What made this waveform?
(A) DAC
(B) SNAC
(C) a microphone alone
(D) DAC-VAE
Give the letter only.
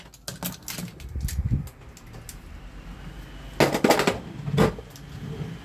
C